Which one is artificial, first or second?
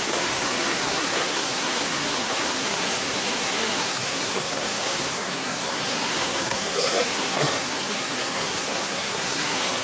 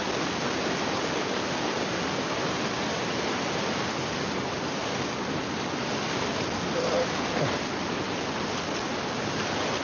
first